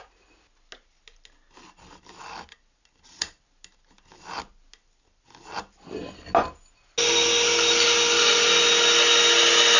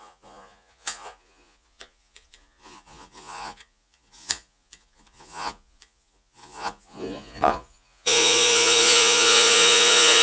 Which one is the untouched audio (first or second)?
first